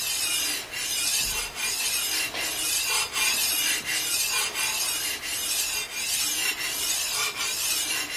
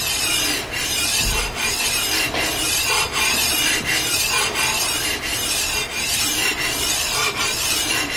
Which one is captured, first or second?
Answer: first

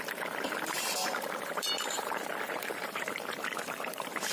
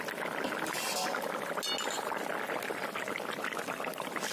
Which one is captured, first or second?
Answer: second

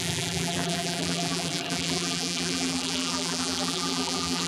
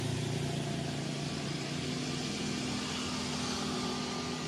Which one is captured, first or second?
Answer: second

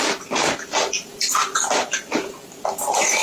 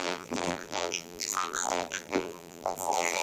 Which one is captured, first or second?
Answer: first